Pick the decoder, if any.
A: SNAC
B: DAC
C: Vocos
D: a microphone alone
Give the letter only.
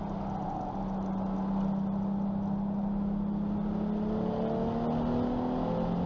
D